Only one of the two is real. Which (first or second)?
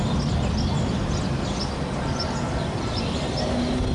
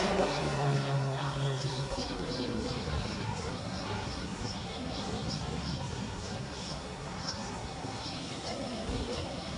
first